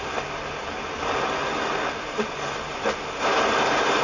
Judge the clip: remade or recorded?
recorded